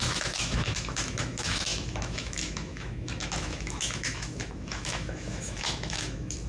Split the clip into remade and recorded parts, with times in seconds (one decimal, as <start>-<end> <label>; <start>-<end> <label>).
0.0-6.5 remade